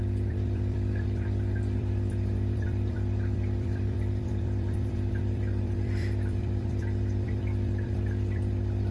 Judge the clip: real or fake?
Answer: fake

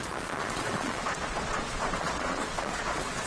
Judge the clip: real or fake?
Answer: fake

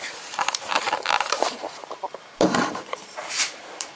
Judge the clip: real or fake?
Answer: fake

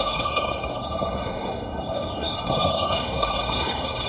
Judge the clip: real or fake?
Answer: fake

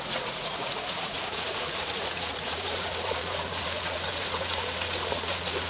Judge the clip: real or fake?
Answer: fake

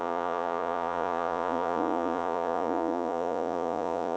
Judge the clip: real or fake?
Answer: fake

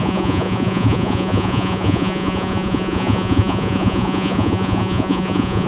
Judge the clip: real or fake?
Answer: fake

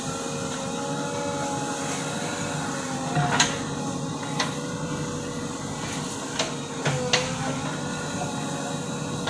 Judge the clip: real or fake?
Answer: real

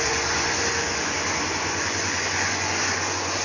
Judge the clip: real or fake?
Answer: fake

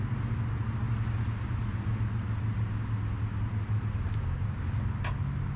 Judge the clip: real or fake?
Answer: real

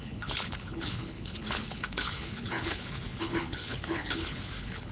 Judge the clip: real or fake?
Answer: fake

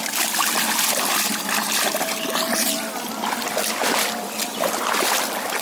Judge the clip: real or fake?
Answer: real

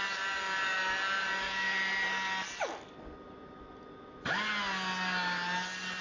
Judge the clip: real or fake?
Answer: real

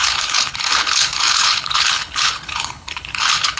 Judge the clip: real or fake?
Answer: fake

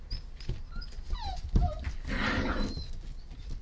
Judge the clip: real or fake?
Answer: real